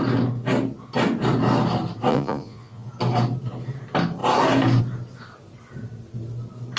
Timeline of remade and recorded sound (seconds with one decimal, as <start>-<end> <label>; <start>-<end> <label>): 0.0-2.1 recorded; 2.1-2.9 remade; 2.9-6.8 recorded